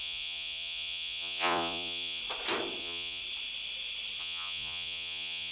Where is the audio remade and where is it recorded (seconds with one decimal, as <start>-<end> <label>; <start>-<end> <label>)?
0.0-2.2 remade; 2.2-2.8 recorded; 2.8-3.2 remade; 3.2-4.2 recorded; 4.2-5.5 remade